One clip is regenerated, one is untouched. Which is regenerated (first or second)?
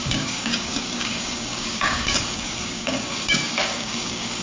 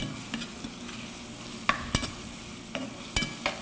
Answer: first